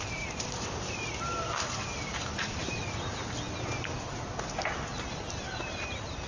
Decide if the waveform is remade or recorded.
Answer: recorded